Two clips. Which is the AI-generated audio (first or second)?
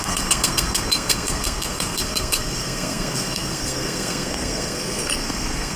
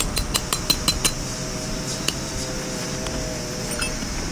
first